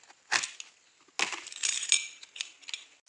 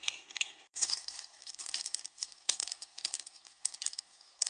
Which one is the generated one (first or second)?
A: second